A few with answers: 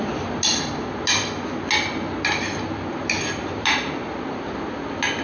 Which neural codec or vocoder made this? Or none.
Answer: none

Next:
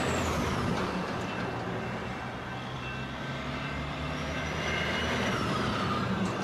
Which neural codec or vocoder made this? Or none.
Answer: none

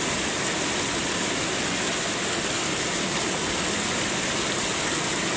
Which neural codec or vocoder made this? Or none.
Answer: none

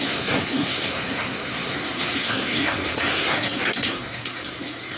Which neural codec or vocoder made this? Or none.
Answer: codec, SNAC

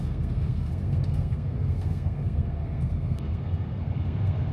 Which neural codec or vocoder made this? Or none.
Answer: codec, SNAC